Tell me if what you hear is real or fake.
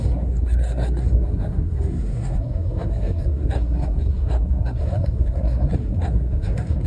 fake